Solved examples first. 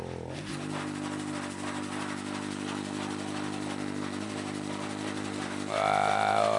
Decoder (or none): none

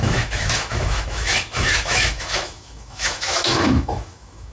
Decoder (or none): autoencoder, DAC-VAE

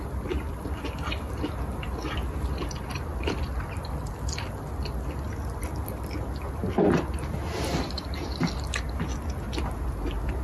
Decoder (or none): none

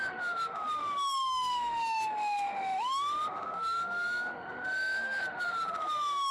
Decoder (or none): autoencoder, DAC-VAE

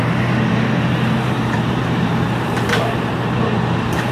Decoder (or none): vocoder, BigVGAN v2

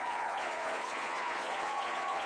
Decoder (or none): vocoder, Vocos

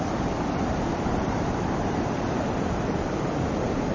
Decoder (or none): vocoder, BigVGAN v2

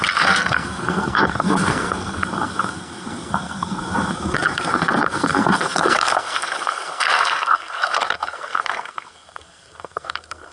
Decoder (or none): codec, SNAC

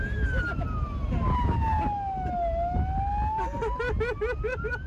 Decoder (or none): none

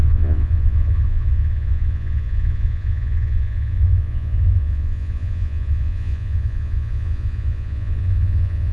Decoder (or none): vocoder, Vocos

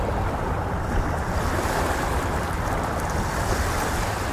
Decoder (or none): none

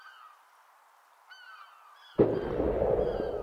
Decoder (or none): none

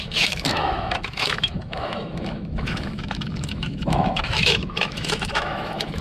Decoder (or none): autoencoder, DAC-VAE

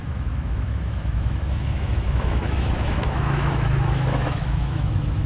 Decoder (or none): autoencoder, DAC-VAE